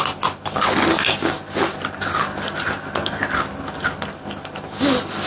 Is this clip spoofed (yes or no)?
no